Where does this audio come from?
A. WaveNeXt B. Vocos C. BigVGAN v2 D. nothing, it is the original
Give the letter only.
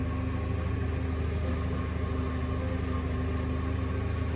D